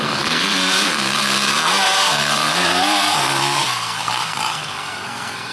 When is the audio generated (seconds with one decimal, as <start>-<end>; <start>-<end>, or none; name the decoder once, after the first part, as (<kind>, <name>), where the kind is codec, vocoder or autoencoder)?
0.0-5.5 (codec, SNAC)